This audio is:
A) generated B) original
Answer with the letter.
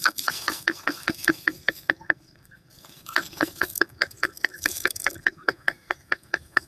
A